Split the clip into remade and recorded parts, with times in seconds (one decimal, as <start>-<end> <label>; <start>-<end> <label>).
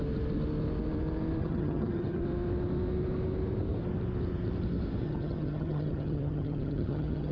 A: 0.0-1.4 recorded; 1.4-2.2 remade; 2.2-5.0 recorded; 5.0-7.3 remade